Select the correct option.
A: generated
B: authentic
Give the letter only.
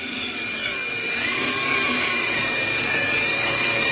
A